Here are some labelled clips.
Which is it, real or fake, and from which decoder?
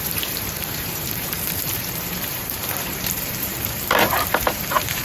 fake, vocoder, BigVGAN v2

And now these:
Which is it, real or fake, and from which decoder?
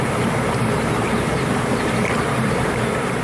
fake, vocoder, BigVGAN v2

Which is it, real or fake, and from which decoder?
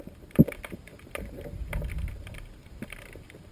fake, vocoder, BigVGAN v2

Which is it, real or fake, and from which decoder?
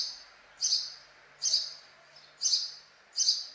real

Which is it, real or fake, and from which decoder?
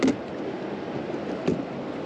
real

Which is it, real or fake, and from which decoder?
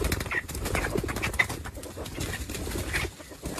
real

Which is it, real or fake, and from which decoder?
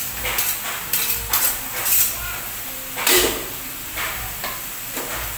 real